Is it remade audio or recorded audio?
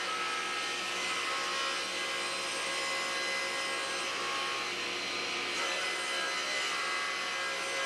recorded